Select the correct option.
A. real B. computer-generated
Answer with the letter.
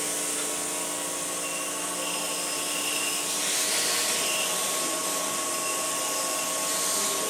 A